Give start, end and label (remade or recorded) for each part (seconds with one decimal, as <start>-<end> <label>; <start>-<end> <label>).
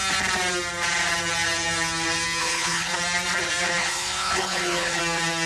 0.0-2.4 recorded; 2.4-2.9 remade; 2.9-3.8 recorded; 3.8-5.0 remade; 5.0-5.5 recorded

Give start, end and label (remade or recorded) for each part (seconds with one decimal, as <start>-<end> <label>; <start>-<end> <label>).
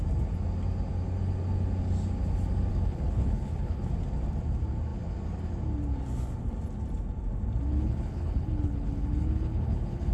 0.0-2.7 recorded; 2.7-3.9 remade; 3.9-7.7 recorded; 7.7-10.1 remade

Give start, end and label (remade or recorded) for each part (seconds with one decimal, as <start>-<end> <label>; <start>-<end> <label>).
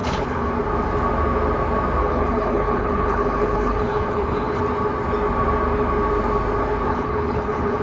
0.0-0.5 remade; 0.5-2.0 recorded; 2.0-4.6 remade; 4.6-6.9 recorded; 6.9-7.8 remade